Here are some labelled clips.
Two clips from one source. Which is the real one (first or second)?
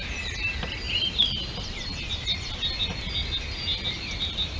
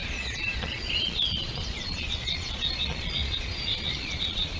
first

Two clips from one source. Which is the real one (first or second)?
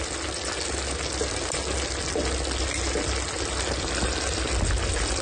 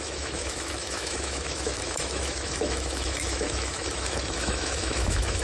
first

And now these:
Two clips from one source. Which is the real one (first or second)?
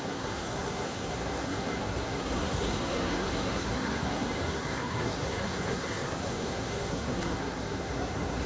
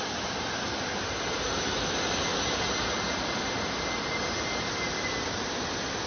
second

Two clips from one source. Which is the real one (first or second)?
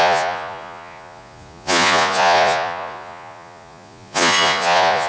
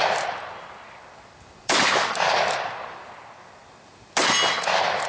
second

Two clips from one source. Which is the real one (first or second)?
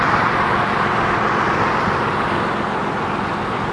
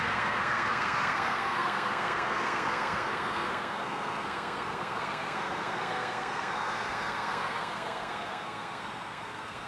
first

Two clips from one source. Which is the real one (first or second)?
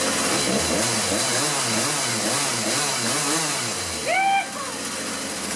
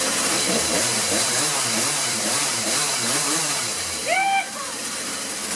first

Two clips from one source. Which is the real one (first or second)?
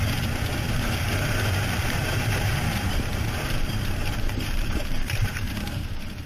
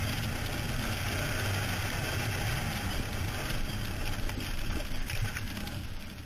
second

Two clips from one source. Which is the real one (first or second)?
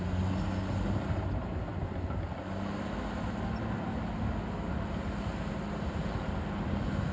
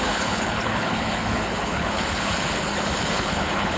first